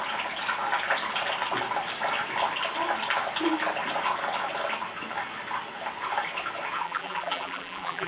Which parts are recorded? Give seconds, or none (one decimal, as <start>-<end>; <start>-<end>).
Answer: 0.0-6.8